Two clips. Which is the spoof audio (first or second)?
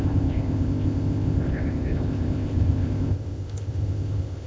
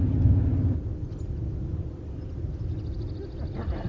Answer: first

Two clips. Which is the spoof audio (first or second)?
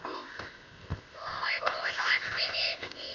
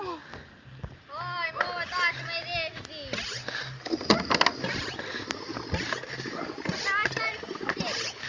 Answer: first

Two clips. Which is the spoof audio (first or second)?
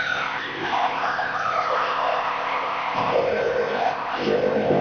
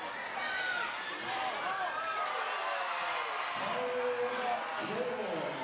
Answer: first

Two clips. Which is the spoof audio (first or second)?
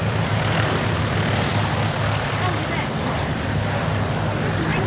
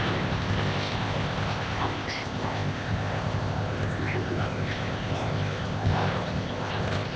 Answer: second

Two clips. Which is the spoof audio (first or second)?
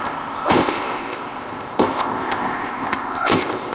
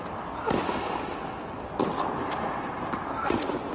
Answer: first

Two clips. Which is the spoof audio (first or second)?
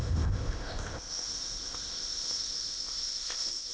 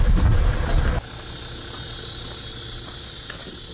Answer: first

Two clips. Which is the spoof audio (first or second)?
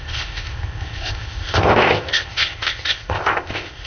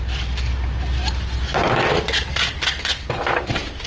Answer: first